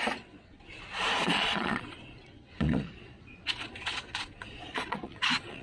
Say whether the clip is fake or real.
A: fake